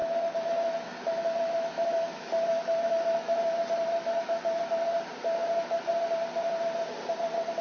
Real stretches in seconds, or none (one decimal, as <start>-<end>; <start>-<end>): 4.6-7.6